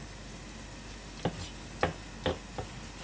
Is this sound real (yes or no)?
yes